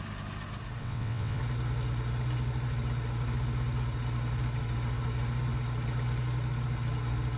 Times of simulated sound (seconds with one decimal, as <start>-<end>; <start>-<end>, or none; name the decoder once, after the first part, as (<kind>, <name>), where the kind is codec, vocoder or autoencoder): 0.8-1.4 (vocoder, WaveNeXt)